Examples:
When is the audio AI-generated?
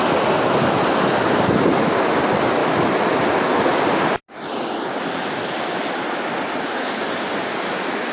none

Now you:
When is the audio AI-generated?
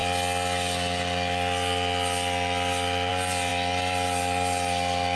none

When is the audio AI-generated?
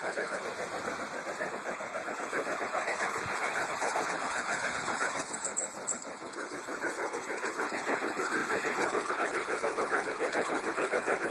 0.0-0.4 (codec, HILCodec); 1.5-11.3